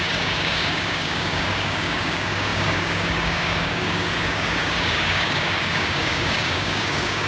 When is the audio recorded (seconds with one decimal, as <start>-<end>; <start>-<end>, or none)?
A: none